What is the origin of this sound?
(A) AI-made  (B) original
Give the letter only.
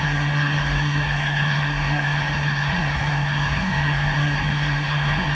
A